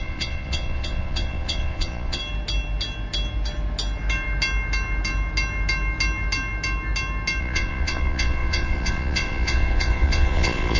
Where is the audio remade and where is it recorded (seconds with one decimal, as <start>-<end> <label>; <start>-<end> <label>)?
0.0-2.2 remade; 2.2-7.4 recorded; 7.4-10.8 remade

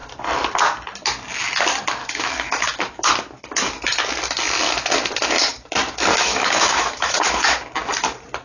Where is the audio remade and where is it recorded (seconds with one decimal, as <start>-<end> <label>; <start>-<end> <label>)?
0.0-2.0 recorded; 2.0-3.1 remade; 3.1-6.1 recorded; 6.1-7.6 remade; 7.6-8.4 recorded

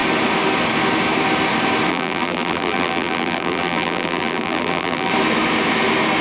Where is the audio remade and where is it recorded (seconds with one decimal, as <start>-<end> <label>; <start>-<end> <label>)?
0.0-1.9 recorded; 1.9-5.1 remade; 5.1-6.2 recorded

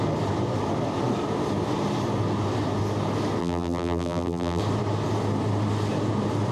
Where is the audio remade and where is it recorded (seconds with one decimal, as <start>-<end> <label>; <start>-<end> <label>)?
0.0-3.4 recorded; 3.4-4.6 remade; 4.6-6.5 recorded

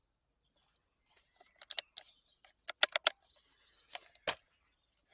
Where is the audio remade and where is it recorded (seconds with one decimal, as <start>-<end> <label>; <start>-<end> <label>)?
0.0-5.1 recorded

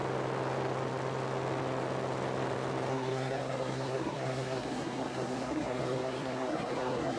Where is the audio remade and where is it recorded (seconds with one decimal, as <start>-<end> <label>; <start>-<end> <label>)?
0.0-2.9 recorded; 2.9-7.2 remade

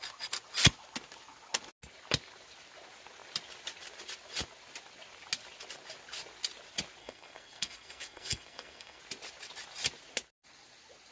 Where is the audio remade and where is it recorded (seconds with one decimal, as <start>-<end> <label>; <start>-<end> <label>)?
0.0-7.0 recorded; 7.0-9.0 remade; 9.0-11.1 recorded

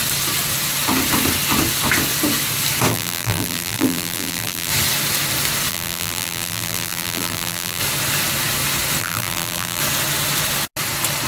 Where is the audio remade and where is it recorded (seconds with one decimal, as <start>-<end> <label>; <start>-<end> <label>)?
0.0-2.9 recorded; 2.9-4.7 remade; 4.7-5.7 recorded; 5.7-7.8 remade; 7.8-9.0 recorded; 9.0-9.8 remade; 9.8-11.3 recorded